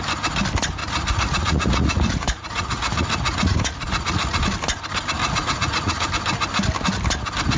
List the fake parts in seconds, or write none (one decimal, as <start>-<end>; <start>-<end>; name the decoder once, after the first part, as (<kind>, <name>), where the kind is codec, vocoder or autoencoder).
0.8-4.4 (vocoder, Vocos); 5.2-6.1